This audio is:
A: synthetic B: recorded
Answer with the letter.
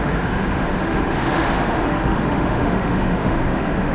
A